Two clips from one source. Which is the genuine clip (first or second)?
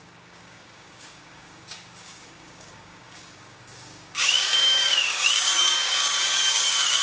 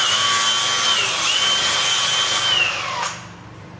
second